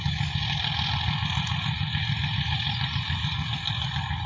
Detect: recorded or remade recorded